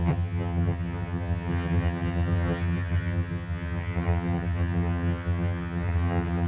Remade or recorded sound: remade